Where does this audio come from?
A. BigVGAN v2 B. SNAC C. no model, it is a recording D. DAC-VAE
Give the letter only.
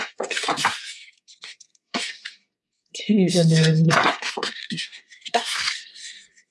B